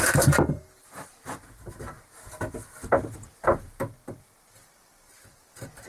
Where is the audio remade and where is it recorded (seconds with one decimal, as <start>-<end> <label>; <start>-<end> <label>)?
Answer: 0.0-5.9 recorded